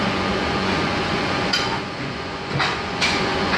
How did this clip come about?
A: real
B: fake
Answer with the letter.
B